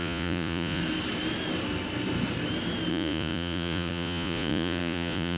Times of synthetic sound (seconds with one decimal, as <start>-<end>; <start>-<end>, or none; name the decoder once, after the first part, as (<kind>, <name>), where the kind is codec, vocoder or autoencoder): 0.0-0.8 (vocoder, Vocos); 2.9-5.4

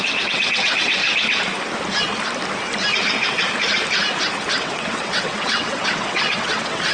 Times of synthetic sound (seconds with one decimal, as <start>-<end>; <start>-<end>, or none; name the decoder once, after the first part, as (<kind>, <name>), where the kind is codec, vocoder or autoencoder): 0.0-1.0 (vocoder, WaveNeXt); 4.6-6.9

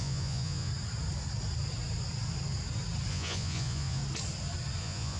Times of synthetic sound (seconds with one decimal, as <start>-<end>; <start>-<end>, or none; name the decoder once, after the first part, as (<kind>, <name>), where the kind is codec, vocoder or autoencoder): 0.0-0.7 (vocoder, Vocos); 3.1-4.0; 4.8-5.2

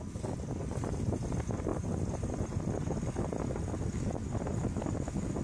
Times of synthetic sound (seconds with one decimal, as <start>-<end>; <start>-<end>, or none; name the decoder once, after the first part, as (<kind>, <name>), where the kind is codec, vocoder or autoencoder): none